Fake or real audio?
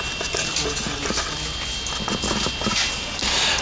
real